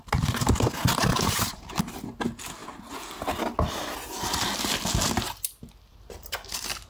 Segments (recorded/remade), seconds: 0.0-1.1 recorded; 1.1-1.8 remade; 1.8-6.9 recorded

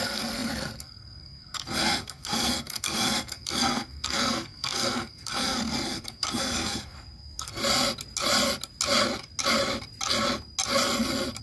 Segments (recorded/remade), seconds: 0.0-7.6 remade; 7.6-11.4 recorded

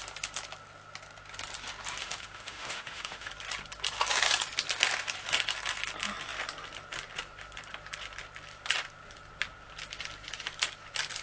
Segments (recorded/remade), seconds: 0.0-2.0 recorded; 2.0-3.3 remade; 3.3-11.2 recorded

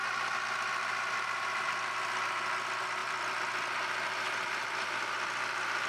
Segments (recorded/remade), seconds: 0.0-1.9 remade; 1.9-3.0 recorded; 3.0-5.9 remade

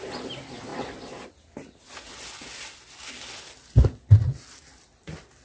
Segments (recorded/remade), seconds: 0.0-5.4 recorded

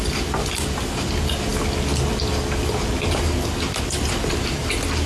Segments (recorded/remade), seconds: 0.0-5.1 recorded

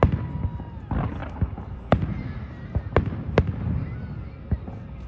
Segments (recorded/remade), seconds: 0.0-5.1 recorded